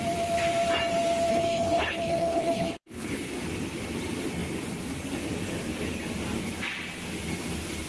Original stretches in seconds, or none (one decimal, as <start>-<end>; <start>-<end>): 0.0-1.3; 3.3-7.9